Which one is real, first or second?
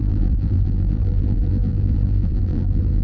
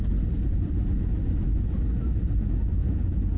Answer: second